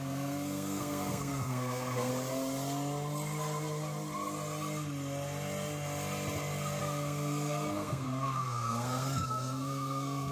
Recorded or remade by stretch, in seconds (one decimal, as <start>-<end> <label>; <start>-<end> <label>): 0.0-2.1 remade; 2.1-6.8 recorded; 6.8-10.3 remade